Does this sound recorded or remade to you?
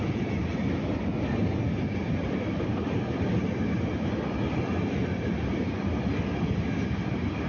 recorded